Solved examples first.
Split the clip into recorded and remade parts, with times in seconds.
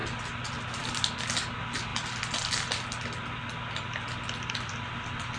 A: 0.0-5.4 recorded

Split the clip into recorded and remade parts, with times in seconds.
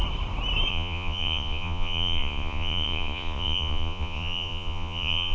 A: 0.0-0.7 recorded; 0.7-5.3 remade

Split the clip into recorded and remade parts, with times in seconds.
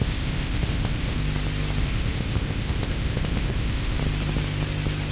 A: 0.0-1.2 remade; 1.2-1.8 recorded; 1.8-4.0 remade; 4.0-5.1 recorded